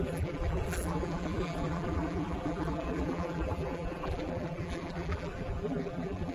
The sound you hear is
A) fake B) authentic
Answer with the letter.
A